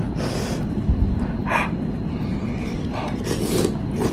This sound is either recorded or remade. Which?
recorded